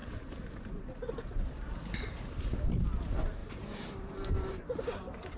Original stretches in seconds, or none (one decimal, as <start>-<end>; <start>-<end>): 2.7-3.4; 4.6-5.4